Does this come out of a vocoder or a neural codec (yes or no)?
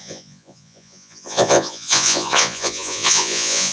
yes